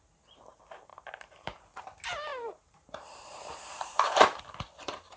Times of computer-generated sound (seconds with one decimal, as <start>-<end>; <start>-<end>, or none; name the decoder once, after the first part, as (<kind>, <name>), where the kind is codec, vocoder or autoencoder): 0.9-1.6 (vocoder, BigVGAN v2); 2.3-4.4